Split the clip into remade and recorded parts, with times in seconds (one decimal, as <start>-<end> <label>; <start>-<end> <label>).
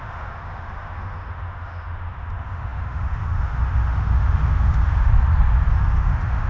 0.0-5.1 remade; 5.1-5.7 recorded; 5.7-6.5 remade